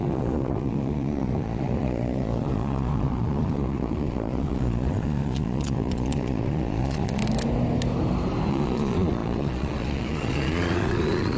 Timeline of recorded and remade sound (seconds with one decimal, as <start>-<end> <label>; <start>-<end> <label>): 0.0-7.2 remade; 7.2-8.5 recorded; 8.5-11.4 remade